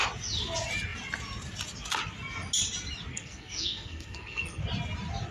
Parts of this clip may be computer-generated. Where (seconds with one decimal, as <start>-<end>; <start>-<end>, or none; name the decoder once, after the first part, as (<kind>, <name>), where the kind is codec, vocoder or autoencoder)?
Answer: 3.1-4.6 (codec, SNAC)